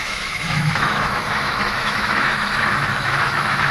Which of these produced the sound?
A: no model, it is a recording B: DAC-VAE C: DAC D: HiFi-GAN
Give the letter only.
B